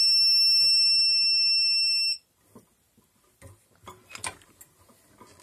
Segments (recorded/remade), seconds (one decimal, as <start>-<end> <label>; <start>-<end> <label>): 0.0-5.4 recorded